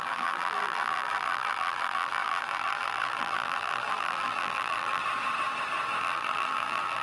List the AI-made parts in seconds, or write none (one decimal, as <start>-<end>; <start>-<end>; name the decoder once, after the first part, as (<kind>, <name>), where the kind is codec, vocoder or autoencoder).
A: 0.0-5.0 (vocoder, BigVGAN v2); 6.0-7.0